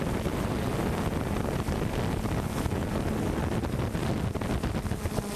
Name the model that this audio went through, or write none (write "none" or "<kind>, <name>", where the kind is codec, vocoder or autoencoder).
none